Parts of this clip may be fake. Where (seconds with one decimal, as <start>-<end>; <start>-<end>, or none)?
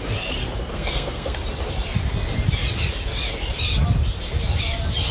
0.7-1.4